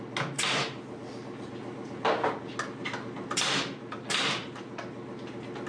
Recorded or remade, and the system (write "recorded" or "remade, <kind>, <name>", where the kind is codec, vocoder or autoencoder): recorded